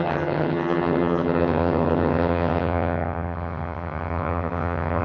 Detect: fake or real fake